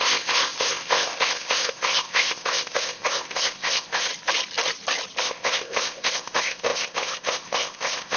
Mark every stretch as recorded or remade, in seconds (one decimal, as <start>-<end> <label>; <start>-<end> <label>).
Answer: 0.0-4.1 remade; 4.1-5.2 recorded; 5.2-8.2 remade